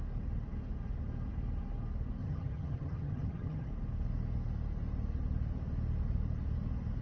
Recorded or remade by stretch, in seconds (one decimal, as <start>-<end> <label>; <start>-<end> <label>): 0.0-2.2 recorded; 2.2-3.7 remade; 3.7-7.0 recorded